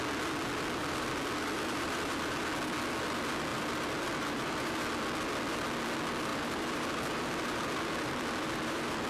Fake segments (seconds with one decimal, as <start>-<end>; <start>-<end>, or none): 0.8-2.4; 3.5-4.7; 6.3-9.1